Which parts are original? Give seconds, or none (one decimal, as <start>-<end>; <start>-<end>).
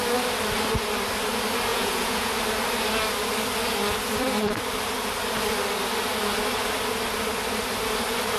0.0-1.7; 2.3-8.4